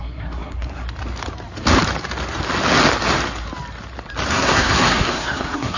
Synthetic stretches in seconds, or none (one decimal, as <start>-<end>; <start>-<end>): 0.0-0.8; 4.3-5.8